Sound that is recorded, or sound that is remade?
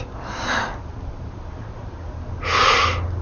recorded